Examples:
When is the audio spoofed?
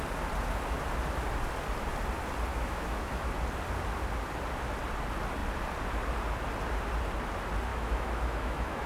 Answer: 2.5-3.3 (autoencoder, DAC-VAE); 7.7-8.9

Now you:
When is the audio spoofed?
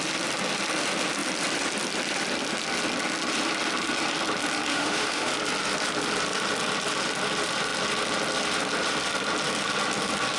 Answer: 4.7-5.3 (autoencoder, DAC-VAE)